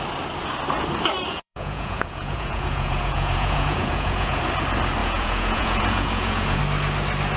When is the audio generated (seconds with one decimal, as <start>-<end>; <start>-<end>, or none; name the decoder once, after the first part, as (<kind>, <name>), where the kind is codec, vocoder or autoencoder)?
1.3-4.4 (vocoder, Vocos); 5.0-6.6